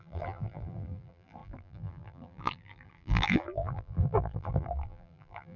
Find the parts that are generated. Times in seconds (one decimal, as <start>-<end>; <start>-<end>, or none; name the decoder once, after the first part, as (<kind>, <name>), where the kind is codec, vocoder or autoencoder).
0.0-5.6 (vocoder, BigVGAN v2)